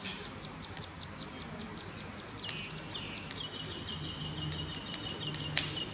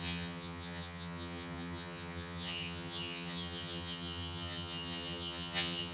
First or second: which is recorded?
first